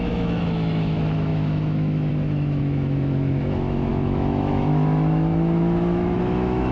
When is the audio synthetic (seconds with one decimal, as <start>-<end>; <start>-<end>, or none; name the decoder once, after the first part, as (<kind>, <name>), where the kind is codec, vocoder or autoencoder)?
0.0-6.7 (autoencoder, DAC-VAE)